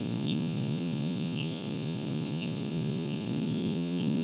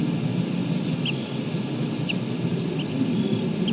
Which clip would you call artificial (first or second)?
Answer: first